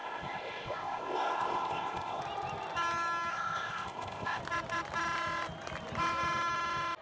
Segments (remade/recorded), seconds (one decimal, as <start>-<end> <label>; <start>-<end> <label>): 0.0-2.2 remade; 2.2-3.3 recorded; 3.3-4.4 remade; 4.4-7.0 recorded